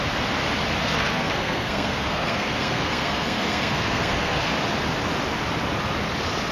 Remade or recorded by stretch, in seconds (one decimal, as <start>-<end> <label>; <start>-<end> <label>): 0.0-0.8 recorded; 0.8-4.5 remade; 4.5-6.5 recorded